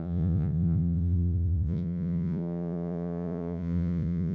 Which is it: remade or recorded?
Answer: remade